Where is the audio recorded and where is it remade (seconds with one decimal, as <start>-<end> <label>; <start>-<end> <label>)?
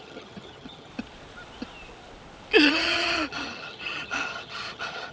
0.0-0.9 remade; 0.9-2.7 recorded; 2.7-5.1 remade